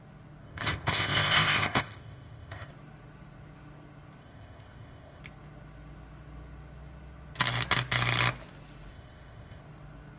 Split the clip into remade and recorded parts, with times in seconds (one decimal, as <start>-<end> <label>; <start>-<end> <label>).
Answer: 0.0-0.4 recorded; 0.4-2.7 remade; 2.7-4.2 recorded; 4.2-5.2 remade; 5.2-8.9 recorded; 8.9-9.6 remade; 9.6-10.2 recorded

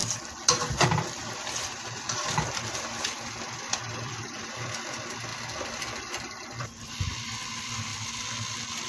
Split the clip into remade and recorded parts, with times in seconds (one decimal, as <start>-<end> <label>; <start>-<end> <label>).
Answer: 0.0-0.6 recorded; 0.6-7.9 remade; 7.9-8.9 recorded

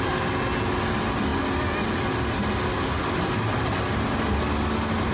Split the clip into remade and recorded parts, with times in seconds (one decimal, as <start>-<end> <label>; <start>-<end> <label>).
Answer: 0.0-5.1 recorded